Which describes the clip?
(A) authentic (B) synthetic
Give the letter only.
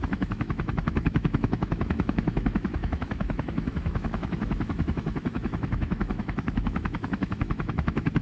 B